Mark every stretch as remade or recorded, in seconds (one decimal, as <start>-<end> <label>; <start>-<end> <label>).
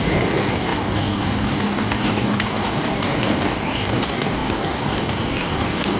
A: 0.0-6.0 remade